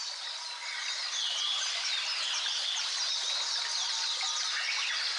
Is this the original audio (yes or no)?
yes